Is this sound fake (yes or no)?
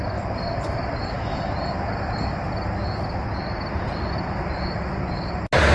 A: no